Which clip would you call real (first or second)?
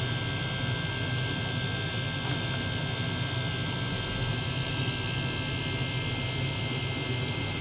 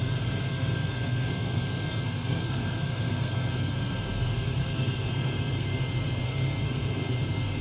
first